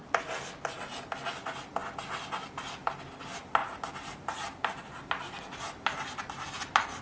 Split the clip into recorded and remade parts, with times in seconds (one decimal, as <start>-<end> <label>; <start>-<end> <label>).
0.0-7.0 recorded